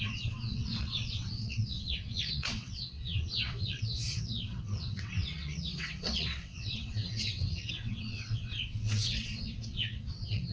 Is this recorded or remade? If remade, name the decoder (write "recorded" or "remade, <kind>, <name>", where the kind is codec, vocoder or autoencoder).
remade, vocoder, WaveNeXt